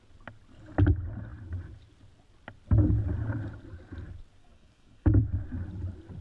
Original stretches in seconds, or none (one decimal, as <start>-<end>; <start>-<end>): 0.0-4.4; 5.2-6.2